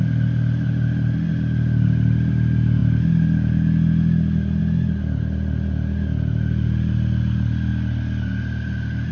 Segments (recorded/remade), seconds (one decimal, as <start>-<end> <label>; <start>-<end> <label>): 0.0-9.1 recorded